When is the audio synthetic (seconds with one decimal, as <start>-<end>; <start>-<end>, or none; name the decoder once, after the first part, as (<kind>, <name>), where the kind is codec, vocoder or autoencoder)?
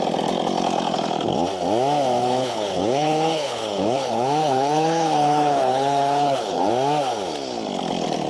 2.2-6.7 (codec, HILCodec)